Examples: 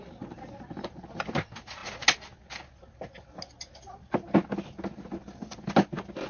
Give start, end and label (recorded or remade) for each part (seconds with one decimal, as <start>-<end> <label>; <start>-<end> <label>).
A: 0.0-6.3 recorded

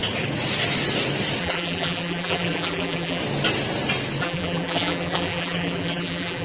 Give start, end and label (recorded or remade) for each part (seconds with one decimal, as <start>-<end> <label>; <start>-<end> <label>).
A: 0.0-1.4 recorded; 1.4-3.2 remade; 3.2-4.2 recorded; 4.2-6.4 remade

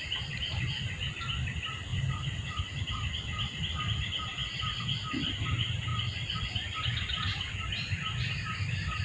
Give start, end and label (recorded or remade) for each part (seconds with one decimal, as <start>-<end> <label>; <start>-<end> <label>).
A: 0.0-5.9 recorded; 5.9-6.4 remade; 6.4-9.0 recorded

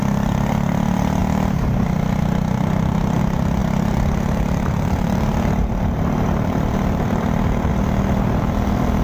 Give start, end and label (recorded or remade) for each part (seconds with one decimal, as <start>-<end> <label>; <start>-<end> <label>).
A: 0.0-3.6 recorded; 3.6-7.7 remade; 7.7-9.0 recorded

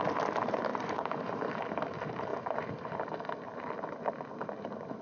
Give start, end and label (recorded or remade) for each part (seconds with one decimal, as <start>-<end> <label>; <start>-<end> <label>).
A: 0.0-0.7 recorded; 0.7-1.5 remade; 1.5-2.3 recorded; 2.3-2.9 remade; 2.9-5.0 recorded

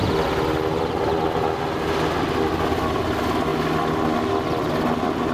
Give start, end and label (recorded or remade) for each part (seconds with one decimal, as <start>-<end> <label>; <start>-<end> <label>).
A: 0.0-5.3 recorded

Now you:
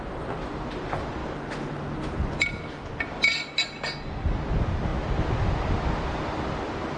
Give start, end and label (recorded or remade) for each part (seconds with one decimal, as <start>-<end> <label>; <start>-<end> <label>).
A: 0.0-1.2 remade; 1.2-4.5 recorded; 4.5-7.0 remade

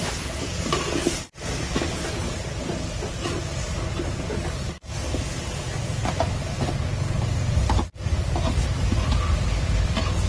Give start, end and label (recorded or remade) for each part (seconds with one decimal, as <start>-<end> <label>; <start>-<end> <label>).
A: 0.0-10.3 recorded